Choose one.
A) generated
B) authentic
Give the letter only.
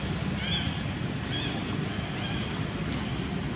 B